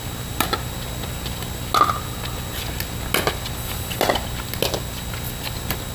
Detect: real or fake real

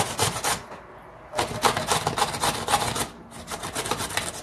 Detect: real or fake real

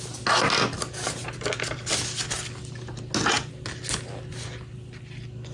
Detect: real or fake real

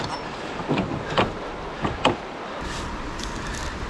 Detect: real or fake real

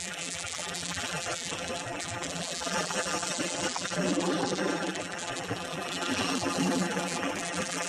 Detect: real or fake fake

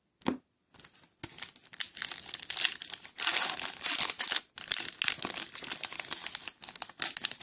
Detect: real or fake real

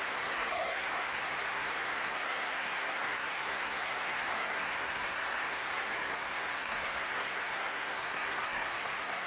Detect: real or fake fake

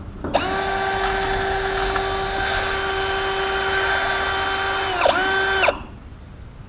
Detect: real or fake real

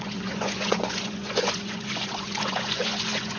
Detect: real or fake fake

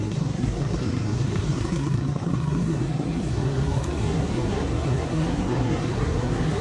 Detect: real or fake fake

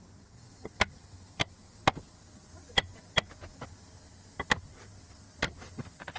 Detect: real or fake real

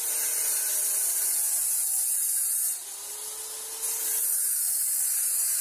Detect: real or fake real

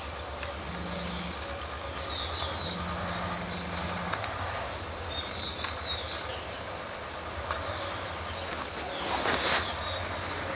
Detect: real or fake real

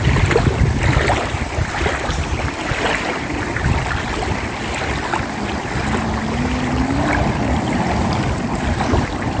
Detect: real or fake real